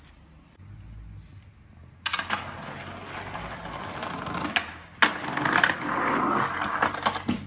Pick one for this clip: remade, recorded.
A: recorded